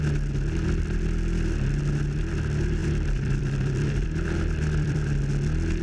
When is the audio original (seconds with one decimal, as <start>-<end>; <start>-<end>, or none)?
0.0-2.8; 5.2-5.8